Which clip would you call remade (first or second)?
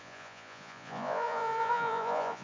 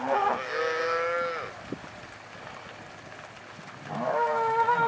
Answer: first